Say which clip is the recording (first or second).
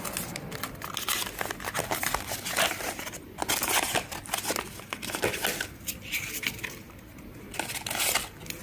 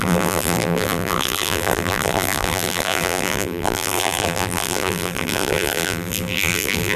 first